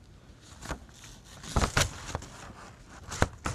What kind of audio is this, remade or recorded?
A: recorded